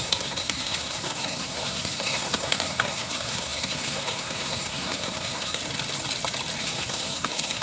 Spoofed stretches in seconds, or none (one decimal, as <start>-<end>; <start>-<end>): 0.0-5.6; 6.6-7.6